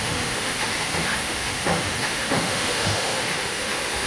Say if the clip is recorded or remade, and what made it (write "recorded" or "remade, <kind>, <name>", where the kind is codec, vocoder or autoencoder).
remade, autoencoder, DAC-VAE